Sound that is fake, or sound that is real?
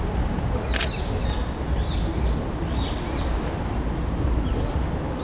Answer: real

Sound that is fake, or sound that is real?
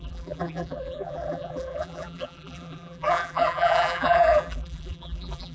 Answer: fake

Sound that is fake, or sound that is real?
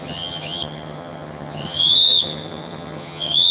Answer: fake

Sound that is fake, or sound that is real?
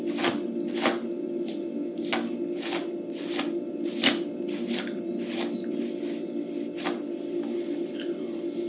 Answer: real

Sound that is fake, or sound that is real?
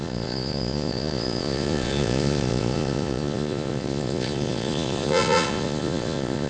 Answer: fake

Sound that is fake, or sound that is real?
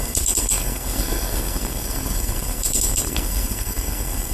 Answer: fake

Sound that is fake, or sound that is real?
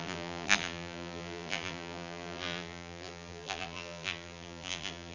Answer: fake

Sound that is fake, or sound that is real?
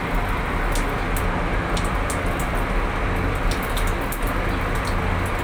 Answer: real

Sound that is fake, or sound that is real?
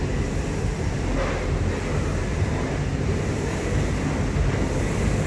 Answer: real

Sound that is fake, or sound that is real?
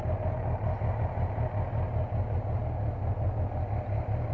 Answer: real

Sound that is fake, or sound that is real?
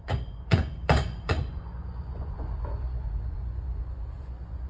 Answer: fake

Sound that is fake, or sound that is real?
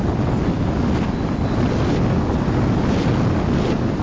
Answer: real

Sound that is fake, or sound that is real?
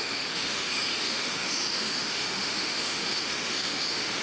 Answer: fake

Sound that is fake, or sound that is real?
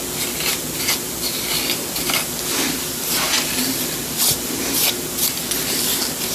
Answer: real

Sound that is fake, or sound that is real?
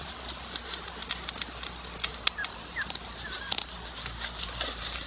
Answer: real